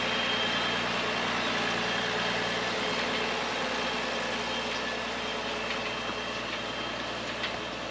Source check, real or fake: real